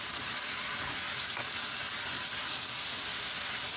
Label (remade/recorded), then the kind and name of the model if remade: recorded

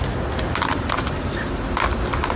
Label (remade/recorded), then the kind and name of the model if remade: recorded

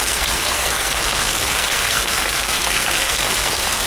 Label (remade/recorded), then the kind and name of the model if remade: remade, codec, SNAC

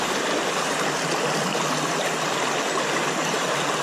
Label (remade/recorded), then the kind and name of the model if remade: recorded